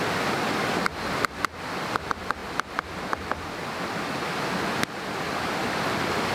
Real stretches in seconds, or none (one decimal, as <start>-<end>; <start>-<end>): 0.0-6.3